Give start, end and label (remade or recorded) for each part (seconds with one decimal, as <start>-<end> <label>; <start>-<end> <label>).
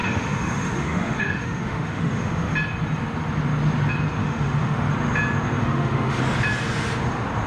0.0-2.5 remade; 2.5-4.2 recorded; 4.2-4.9 remade; 4.9-5.6 recorded; 5.6-6.2 remade; 6.2-7.5 recorded